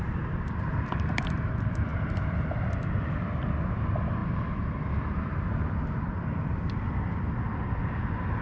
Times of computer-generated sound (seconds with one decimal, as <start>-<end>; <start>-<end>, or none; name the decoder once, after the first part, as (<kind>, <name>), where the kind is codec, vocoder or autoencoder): none